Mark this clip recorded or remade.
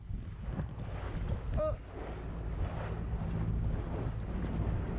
recorded